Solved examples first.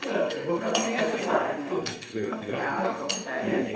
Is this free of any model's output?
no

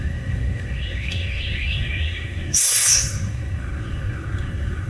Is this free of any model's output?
no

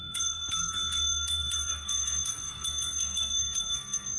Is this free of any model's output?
no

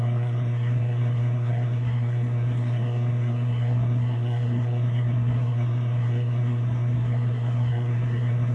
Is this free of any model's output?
no